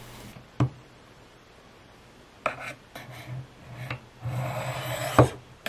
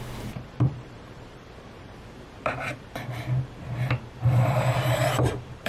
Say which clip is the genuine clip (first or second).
first